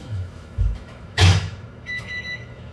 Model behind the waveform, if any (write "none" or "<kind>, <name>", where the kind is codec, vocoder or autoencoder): autoencoder, DAC-VAE